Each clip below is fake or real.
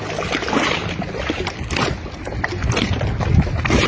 real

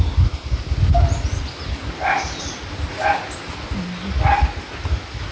real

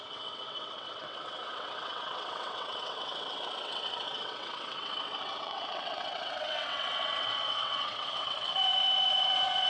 fake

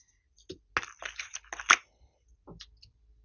real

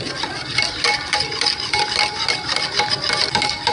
real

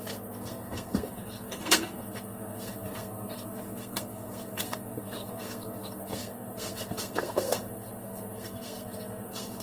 fake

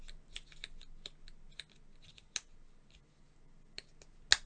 real